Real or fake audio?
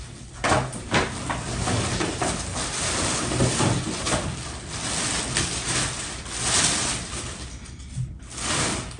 real